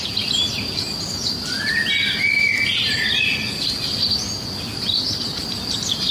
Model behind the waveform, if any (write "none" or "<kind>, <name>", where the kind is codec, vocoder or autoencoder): none